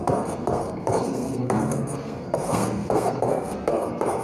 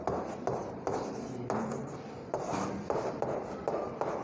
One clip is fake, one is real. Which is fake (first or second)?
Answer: first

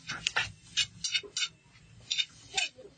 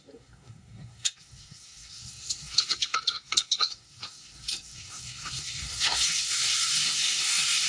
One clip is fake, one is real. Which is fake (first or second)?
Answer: second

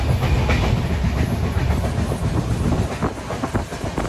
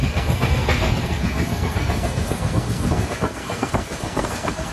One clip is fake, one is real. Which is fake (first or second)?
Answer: second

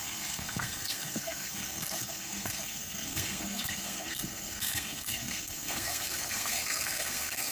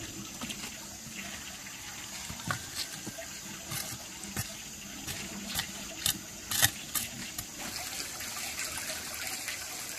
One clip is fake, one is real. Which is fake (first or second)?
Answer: first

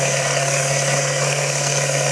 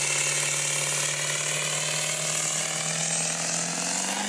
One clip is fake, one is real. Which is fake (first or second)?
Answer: first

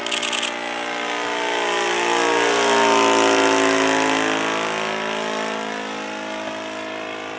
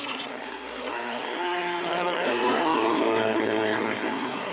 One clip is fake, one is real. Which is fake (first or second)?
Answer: second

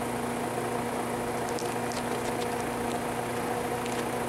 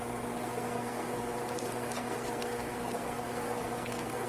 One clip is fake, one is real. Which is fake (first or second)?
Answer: second